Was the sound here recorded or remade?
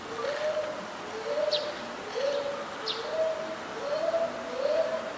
recorded